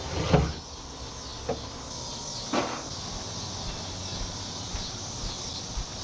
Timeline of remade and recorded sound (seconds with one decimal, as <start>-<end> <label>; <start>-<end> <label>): 0.0-6.0 recorded